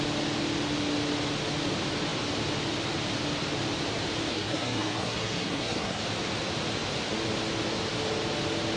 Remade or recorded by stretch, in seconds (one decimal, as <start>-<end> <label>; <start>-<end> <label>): 0.0-4.3 recorded; 4.3-6.0 remade; 6.0-8.8 recorded